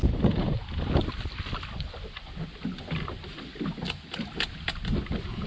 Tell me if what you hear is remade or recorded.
recorded